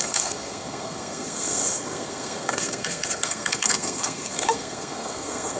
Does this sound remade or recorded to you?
remade